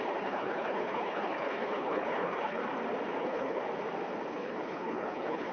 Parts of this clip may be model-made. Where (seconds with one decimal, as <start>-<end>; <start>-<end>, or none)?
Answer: 0.0-2.6; 3.2-3.6; 4.3-5.5